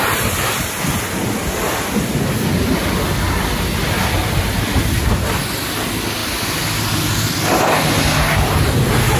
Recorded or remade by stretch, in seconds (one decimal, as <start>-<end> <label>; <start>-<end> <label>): 0.0-9.2 recorded